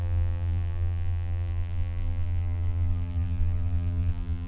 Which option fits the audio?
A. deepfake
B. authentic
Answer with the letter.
A